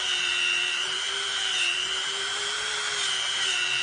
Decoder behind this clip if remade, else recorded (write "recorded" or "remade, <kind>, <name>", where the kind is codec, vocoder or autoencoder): remade, vocoder, BigVGAN v2